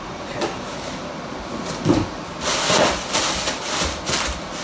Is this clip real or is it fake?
real